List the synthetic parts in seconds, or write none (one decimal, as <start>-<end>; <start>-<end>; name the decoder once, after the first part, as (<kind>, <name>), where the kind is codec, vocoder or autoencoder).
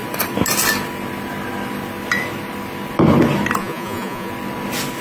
3.6-4.3 (vocoder, Vocos)